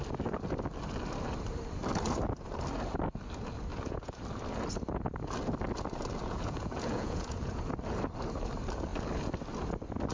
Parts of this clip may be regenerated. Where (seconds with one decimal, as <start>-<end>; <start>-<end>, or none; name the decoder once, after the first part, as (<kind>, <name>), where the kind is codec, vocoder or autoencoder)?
3.7-4.2 (vocoder, Vocos); 6.2-7.7